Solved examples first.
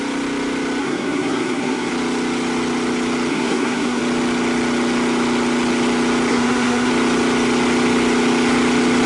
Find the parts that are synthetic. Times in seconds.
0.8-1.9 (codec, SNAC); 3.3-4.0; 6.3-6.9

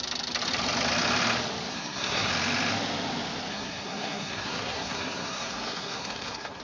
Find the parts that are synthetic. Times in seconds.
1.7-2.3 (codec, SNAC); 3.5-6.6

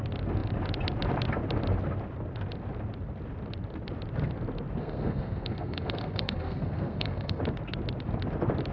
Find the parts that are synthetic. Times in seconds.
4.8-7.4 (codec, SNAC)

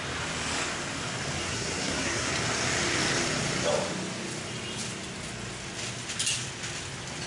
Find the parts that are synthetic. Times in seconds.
1.4-2.3 (codec, SNAC)

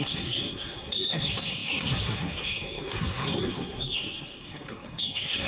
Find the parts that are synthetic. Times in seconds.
0.0-5.5 (codec, SNAC)

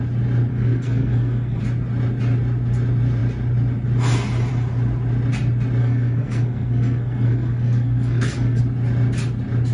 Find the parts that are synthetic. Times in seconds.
0.5-1.6 (codec, SNAC); 5.8-8.6

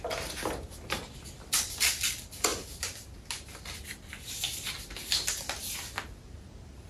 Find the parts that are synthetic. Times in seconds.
none